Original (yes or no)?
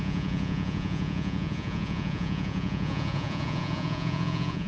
no